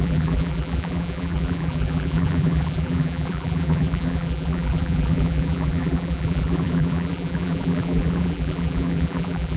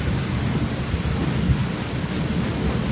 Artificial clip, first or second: first